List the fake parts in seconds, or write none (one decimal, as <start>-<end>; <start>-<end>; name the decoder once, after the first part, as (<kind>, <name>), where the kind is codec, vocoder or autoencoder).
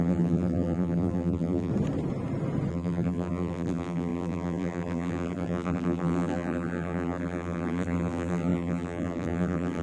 0.0-1.7 (vocoder, BigVGAN v2); 2.7-9.8